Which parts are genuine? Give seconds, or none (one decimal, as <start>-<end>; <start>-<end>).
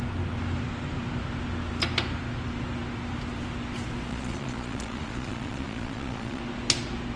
0.0-4.1; 6.4-7.2